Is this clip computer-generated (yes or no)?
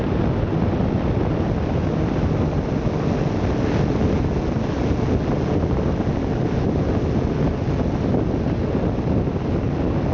no